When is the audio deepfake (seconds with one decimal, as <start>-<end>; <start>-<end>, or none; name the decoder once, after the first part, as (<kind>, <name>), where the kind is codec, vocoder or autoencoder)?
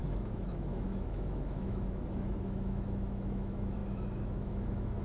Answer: 0.0-5.0 (autoencoder, DAC-VAE)